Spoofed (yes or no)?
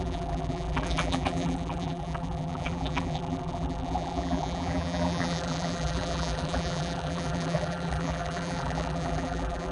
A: yes